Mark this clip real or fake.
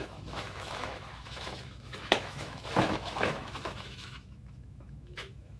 fake